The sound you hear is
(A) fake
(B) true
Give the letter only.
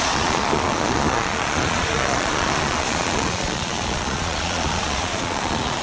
A